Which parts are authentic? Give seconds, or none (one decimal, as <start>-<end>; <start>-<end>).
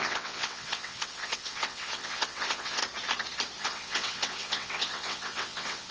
2.8-3.6